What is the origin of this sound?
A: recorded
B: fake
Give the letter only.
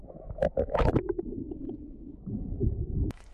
B